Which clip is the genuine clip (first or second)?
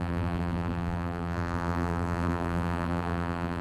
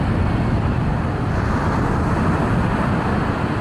second